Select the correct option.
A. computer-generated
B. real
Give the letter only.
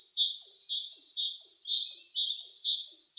B